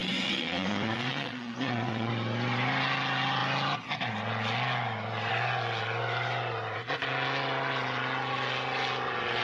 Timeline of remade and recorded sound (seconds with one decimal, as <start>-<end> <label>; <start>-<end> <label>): 0.0-2.1 remade; 2.1-9.4 recorded